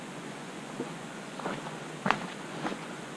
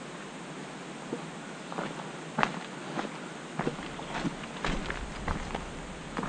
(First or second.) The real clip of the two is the second